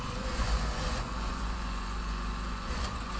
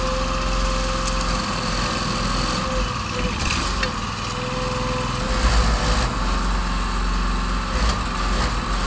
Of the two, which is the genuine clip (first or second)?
second